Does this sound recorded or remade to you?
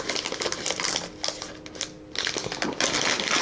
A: recorded